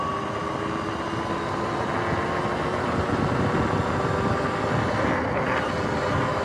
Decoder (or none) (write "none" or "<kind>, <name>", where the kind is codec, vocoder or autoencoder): none